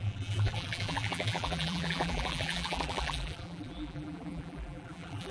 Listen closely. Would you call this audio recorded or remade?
remade